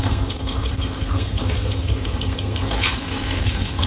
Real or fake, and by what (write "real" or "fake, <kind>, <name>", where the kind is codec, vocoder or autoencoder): fake, codec, SNAC